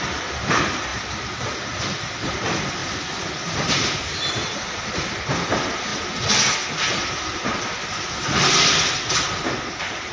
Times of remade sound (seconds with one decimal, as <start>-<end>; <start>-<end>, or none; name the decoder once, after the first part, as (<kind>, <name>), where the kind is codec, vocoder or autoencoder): 0.9-1.5 (vocoder, BigVGAN v2); 2.8-4.8